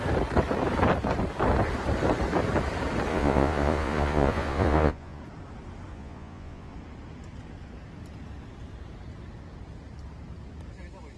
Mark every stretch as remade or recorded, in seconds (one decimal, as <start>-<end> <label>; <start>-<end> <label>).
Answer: 0.0-3.1 recorded; 3.1-5.2 remade; 5.2-5.9 recorded; 5.9-6.7 remade; 6.7-11.2 recorded